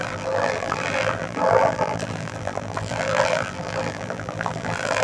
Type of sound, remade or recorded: remade